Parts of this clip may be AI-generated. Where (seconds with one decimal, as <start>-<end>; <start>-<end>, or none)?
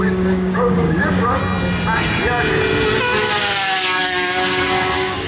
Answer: 0.0-1.4; 3.3-5.3